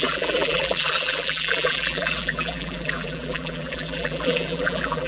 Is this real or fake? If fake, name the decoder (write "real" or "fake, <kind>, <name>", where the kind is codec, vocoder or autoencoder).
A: fake, vocoder, BigVGAN v2